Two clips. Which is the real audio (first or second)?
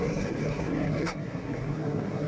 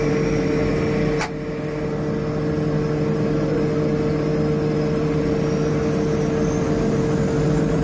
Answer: second